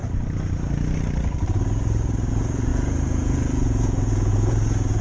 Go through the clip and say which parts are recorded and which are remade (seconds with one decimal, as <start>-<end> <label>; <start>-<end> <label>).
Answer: 0.0-2.3 recorded; 2.3-5.0 remade

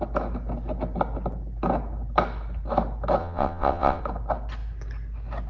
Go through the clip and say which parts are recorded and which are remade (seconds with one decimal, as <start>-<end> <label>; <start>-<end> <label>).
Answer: 0.0-3.2 recorded; 3.2-4.0 remade; 4.0-5.5 recorded

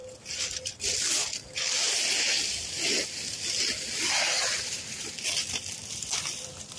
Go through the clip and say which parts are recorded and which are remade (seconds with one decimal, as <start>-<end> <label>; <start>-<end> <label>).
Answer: 0.0-6.8 recorded

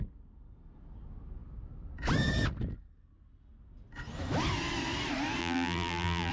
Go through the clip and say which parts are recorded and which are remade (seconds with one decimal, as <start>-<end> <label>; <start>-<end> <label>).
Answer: 0.0-5.4 recorded; 5.4-6.3 remade

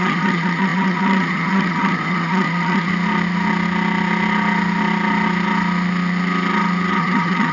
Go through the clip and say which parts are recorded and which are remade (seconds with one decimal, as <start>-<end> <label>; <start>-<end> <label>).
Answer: 0.0-2.9 remade; 2.9-7.0 recorded; 7.0-7.5 remade